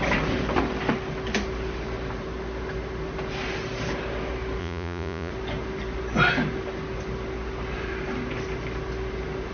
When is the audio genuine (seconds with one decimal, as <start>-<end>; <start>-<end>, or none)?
0.0-4.6; 5.3-9.5

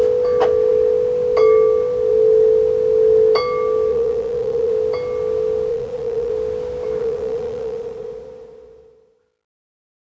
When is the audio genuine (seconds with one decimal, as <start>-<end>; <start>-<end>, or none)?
0.0-3.9; 4.7-5.7; 6.3-7.0; 9.2-10.0

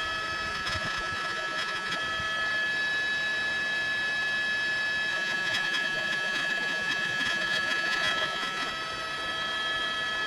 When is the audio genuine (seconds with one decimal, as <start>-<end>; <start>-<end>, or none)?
0.0-0.5; 2.0-5.1; 8.7-10.3

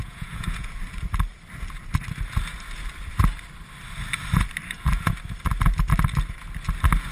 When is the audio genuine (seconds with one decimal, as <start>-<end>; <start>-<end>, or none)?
0.8-7.1

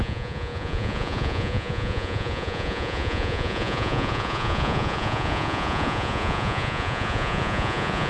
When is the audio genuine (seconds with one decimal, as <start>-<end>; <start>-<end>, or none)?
none

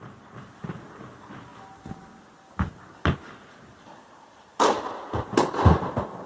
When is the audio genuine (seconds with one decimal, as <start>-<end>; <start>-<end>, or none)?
0.0-6.3